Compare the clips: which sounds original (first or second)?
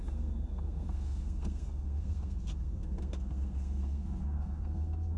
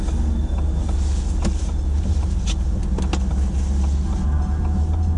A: second